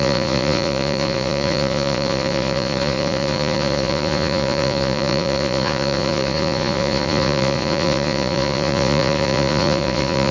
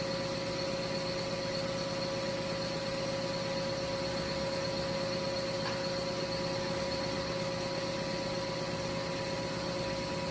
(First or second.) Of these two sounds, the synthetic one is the first